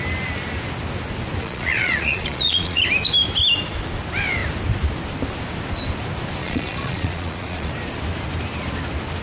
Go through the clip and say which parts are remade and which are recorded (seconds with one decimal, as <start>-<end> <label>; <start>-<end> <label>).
0.0-1.4 recorded; 1.4-2.8 remade; 2.8-6.4 recorded; 6.4-7.7 remade; 7.7-9.2 recorded